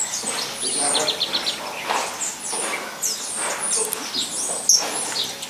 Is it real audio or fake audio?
real